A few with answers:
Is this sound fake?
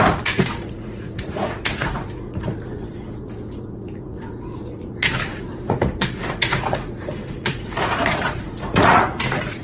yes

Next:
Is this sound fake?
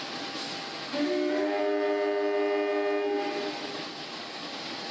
no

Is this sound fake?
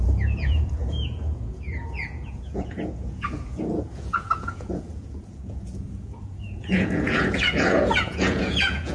yes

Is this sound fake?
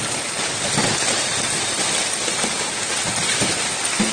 no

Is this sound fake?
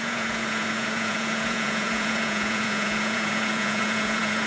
yes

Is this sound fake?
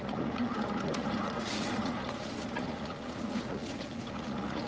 yes